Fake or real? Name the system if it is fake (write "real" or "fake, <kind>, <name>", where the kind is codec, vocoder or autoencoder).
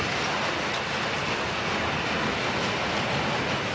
real